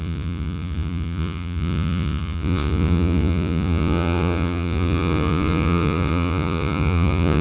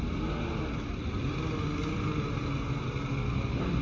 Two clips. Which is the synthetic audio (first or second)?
first